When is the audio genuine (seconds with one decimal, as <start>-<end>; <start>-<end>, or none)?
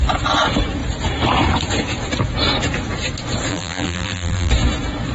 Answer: 0.0-3.5; 4.5-5.1